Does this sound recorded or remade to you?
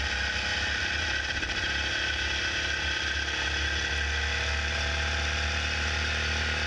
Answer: recorded